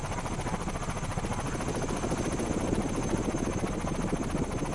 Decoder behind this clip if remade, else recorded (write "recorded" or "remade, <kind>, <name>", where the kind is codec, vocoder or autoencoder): recorded